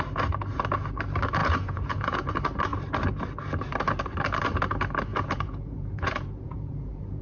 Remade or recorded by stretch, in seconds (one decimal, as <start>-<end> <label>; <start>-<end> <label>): 0.0-1.4 recorded; 1.4-2.3 remade; 2.3-5.1 recorded; 5.1-7.2 remade